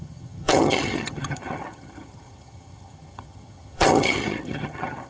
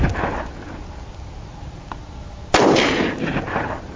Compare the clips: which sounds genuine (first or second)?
second